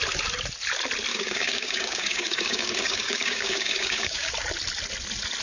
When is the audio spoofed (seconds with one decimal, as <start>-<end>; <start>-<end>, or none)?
1.1-4.3